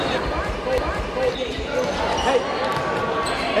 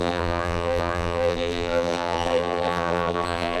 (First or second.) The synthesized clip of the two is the second